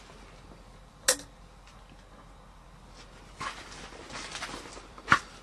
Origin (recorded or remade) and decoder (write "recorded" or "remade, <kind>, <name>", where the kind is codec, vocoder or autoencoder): recorded